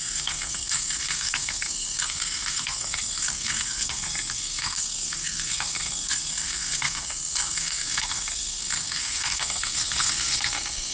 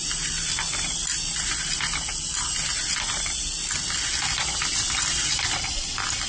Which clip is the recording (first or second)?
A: second